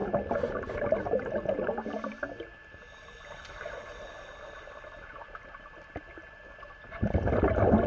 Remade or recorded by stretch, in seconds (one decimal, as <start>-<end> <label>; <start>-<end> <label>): 0.0-7.9 recorded